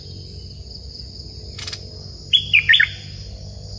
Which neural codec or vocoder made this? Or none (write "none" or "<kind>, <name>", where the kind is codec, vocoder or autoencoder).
none